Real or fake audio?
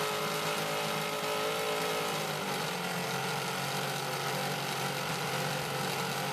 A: real